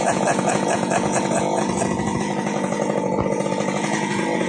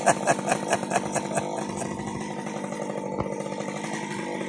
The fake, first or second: first